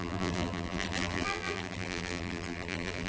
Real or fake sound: fake